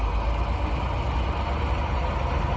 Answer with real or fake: real